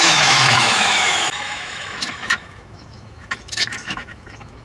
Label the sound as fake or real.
fake